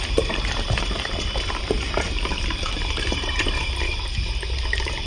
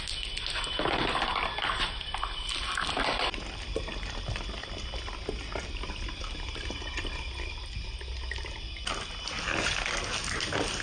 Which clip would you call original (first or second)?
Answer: second